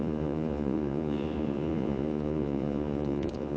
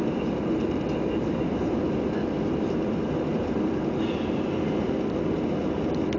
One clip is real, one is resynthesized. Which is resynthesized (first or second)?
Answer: first